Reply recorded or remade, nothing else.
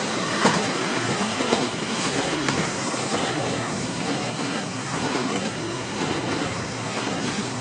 remade